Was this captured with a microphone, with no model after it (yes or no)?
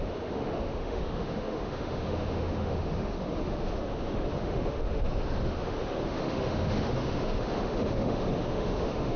no